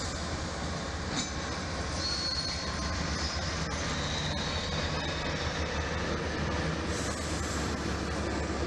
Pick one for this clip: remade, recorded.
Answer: recorded